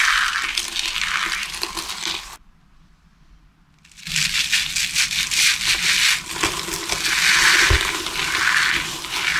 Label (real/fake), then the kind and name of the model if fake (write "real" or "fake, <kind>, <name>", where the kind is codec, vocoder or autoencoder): real